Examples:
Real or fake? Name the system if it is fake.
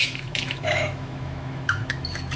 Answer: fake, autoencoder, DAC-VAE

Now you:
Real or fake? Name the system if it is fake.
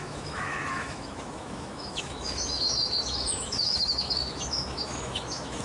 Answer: fake, autoencoder, DAC-VAE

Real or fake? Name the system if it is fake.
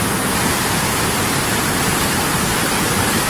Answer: real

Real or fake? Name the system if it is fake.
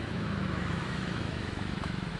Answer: fake, autoencoder, DAC-VAE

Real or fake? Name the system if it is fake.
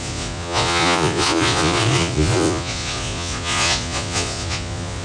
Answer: fake, vocoder, Vocos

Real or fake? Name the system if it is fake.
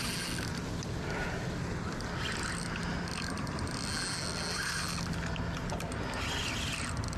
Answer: real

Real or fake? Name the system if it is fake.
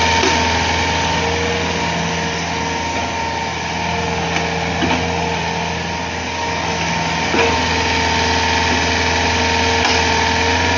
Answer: real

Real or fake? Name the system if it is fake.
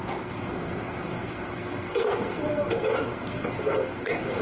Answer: fake, codec, SNAC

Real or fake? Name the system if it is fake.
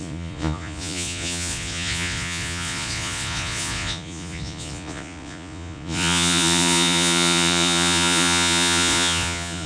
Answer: fake, vocoder, Vocos